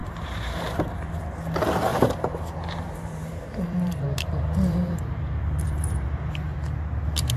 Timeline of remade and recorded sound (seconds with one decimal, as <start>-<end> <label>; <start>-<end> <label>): 0.0-1.2 remade; 1.2-1.9 recorded; 1.9-6.3 remade; 6.3-7.4 recorded